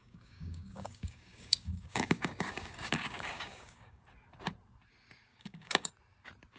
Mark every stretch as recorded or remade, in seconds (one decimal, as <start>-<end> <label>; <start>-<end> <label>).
0.0-4.0 remade; 4.0-5.3 recorded; 5.3-5.9 remade; 5.9-6.6 recorded